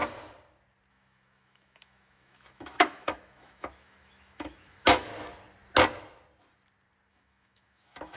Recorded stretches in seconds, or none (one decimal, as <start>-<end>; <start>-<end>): 0.0-0.9; 5.1-7.1